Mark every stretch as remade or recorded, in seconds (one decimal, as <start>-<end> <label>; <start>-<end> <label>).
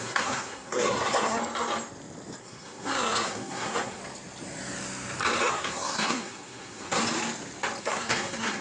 0.0-1.4 remade; 1.4-2.4 recorded; 2.4-4.0 remade; 4.0-5.5 recorded; 5.5-7.0 remade; 7.0-7.8 recorded; 7.8-8.6 remade